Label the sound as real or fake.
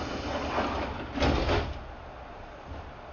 real